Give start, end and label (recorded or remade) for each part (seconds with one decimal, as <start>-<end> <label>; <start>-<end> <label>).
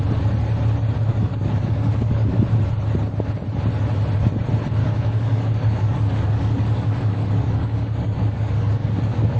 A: 0.0-1.1 recorded; 1.1-2.4 remade; 2.4-4.8 recorded; 4.8-9.4 remade